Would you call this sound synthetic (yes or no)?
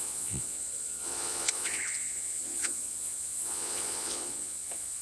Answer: yes